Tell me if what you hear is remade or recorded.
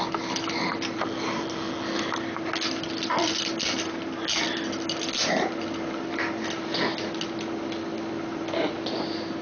recorded